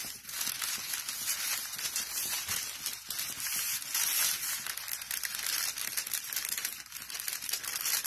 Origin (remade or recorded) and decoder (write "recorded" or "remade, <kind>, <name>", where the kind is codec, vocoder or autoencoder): recorded